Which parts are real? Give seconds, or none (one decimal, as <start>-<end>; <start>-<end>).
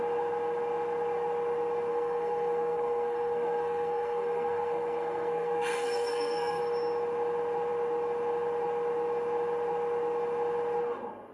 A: 0.0-1.9; 6.6-11.3